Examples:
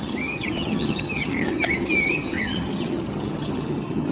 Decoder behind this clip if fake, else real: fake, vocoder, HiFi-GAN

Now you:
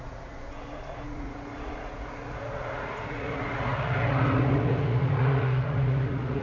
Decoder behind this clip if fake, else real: fake, vocoder, Vocos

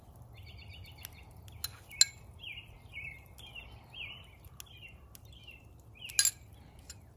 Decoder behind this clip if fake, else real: real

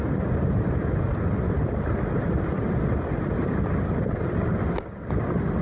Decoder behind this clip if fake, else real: real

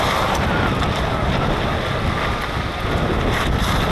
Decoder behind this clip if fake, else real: real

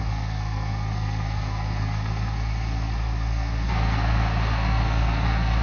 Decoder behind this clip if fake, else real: fake, codec, SNAC